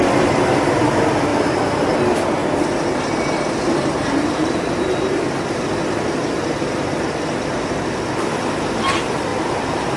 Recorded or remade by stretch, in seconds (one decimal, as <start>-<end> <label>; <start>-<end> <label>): 0.0-1.3 recorded; 1.3-1.9 remade; 1.9-2.4 recorded; 2.4-7.1 remade; 7.1-9.3 recorded; 9.3-10.0 remade